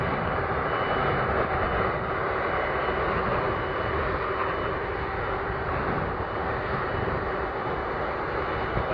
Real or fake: real